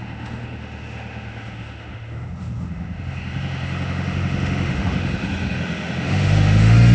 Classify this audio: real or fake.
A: fake